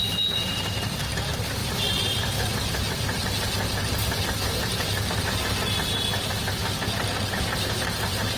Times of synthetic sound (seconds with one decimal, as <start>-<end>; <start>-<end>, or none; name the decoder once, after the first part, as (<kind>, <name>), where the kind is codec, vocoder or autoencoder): 7.5-8.4 (vocoder, BigVGAN v2)